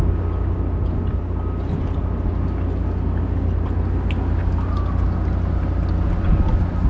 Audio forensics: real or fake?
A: real